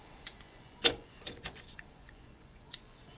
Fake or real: fake